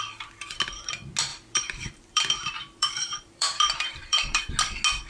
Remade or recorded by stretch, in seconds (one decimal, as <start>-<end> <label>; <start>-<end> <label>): 0.0-1.3 recorded; 1.3-4.4 remade; 4.4-5.1 recorded